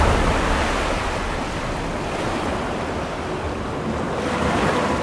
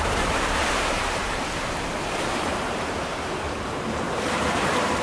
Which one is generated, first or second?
second